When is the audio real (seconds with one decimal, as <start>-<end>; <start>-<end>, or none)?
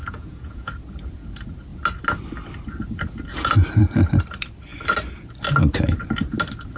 0.7-6.8